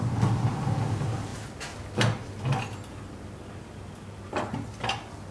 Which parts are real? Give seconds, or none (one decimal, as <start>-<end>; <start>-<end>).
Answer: 0.0-5.3